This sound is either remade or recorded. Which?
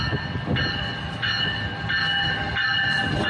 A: recorded